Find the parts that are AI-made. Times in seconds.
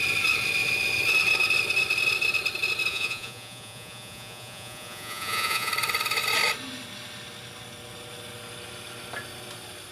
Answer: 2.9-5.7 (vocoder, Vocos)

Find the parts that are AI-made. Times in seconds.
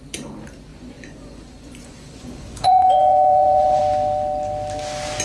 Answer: 0.7-3.8 (vocoder, Vocos)